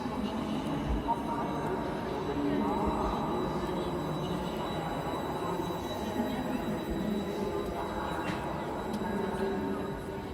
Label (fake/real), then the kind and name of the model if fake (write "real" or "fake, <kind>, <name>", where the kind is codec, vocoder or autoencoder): real